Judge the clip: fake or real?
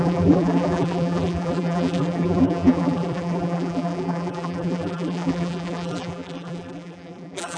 fake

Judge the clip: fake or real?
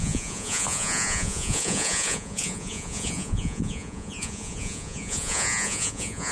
fake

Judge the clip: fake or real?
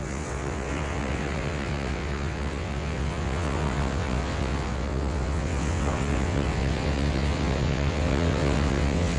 fake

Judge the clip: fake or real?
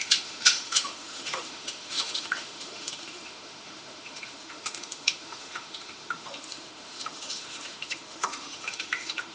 fake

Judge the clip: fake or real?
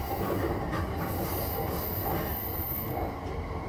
real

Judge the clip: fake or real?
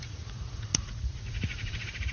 fake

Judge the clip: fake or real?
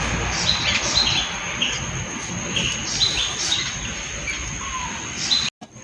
real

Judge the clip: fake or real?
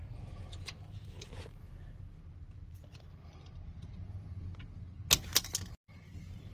real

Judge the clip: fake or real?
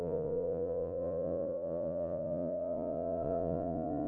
fake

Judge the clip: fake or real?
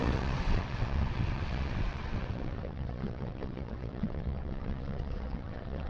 fake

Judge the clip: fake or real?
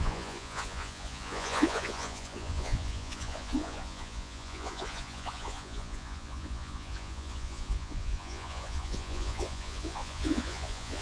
fake